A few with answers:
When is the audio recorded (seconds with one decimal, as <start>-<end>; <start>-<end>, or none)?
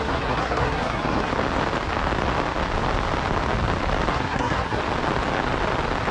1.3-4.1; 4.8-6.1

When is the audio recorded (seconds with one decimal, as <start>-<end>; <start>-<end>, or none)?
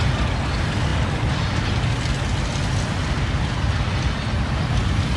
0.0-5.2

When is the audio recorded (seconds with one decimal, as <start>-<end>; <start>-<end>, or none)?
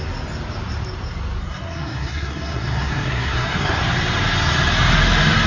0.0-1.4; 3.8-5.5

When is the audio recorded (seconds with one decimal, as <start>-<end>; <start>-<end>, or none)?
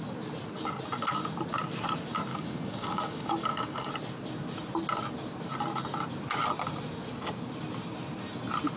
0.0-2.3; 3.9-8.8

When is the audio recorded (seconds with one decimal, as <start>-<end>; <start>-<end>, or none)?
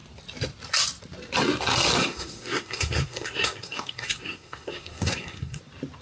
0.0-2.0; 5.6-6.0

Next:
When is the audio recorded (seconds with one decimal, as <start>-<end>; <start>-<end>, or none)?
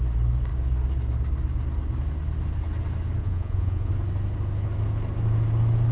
0.0-3.2; 3.9-5.9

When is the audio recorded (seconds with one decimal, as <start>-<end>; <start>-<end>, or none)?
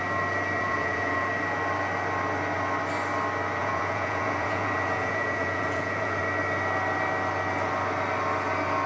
0.0-0.6; 1.3-3.6; 6.2-8.9